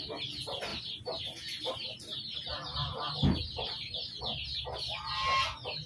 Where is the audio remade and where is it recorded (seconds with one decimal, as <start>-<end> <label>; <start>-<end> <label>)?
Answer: 0.0-0.7 recorded; 0.7-4.2 remade; 4.2-5.9 recorded